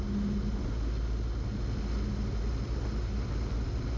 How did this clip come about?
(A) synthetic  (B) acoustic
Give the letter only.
B